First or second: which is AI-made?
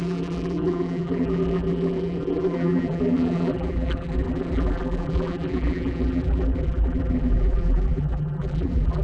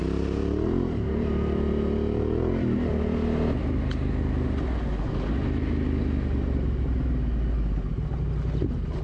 first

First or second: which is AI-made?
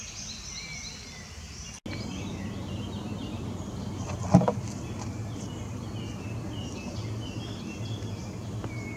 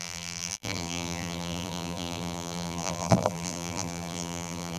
second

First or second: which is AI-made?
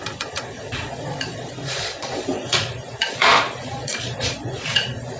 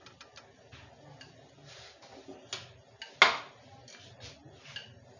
first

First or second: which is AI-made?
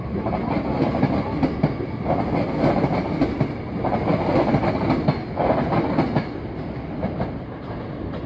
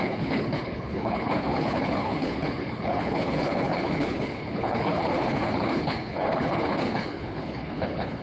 second